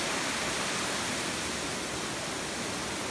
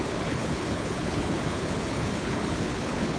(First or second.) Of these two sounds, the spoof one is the second